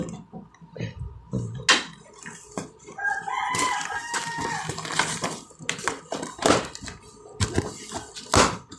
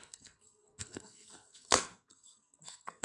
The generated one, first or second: second